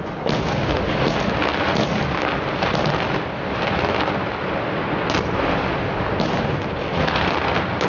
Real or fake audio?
real